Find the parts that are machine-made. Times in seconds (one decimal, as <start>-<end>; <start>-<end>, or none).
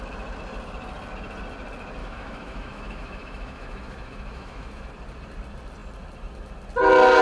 2.0-4.9